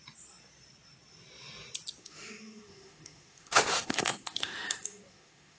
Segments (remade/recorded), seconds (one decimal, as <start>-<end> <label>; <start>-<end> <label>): 0.0-2.0 recorded; 2.0-5.6 remade